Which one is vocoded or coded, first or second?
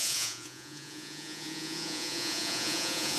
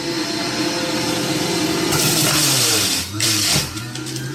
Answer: first